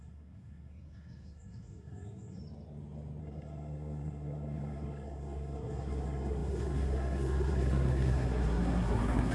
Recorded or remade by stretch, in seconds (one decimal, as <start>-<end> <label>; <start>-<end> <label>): 0.0-2.4 remade; 2.4-3.2 recorded; 3.2-9.3 remade